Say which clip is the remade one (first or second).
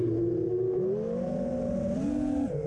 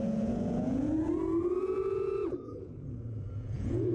second